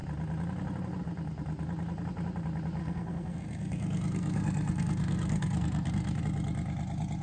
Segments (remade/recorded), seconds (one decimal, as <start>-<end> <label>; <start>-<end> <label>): 0.0-2.8 recorded; 2.8-6.2 remade; 6.2-7.2 recorded